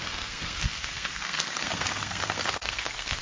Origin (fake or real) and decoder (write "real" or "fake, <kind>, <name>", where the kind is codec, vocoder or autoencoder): fake, codec, SNAC